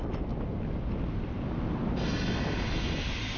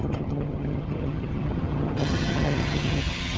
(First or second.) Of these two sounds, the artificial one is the second